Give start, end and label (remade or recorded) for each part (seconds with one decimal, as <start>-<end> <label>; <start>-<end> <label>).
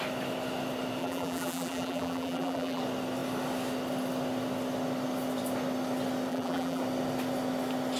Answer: 0.0-1.0 recorded; 1.0-2.8 remade; 2.8-6.3 recorded; 6.3-6.8 remade; 6.8-8.0 recorded